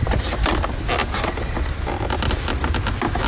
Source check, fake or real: real